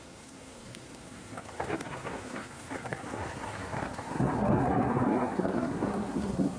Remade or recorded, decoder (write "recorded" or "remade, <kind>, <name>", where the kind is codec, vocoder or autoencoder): remade, codec, SNAC